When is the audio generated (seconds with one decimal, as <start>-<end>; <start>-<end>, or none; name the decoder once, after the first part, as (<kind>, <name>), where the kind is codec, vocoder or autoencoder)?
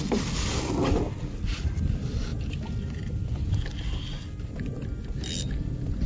1.2-1.8 (vocoder, Vocos)